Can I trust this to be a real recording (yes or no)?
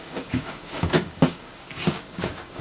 no